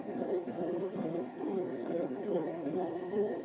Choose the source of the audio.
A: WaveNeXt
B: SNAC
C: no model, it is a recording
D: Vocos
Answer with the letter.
B